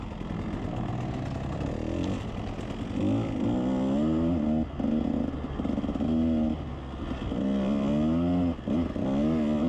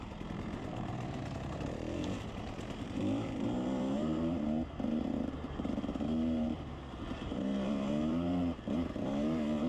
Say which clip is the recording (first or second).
first